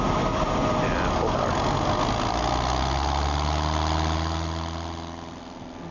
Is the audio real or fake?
real